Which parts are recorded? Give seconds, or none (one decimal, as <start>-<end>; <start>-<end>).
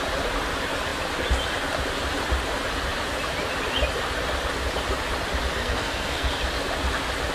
0.0-5.6; 6.3-7.3